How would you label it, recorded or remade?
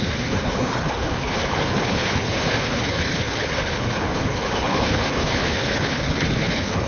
remade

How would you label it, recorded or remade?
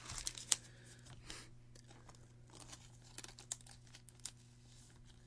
recorded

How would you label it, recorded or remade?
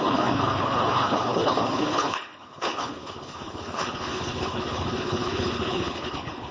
remade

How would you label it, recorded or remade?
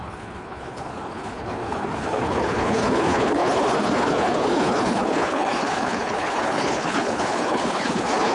remade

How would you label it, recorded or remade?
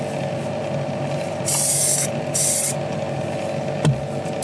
recorded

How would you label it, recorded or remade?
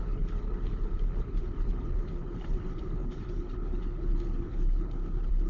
remade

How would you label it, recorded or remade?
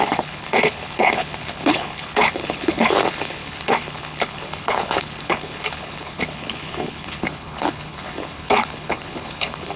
remade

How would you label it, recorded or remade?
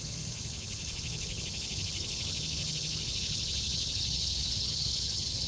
remade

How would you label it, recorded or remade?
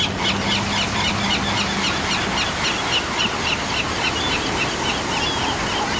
recorded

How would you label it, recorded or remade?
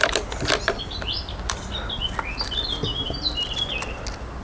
recorded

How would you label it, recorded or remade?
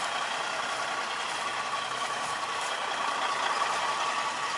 recorded